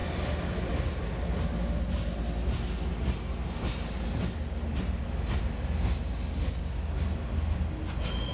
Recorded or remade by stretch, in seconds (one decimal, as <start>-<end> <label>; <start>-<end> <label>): 0.0-8.3 recorded